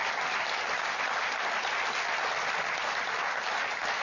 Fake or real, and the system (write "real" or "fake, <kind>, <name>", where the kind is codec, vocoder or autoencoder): real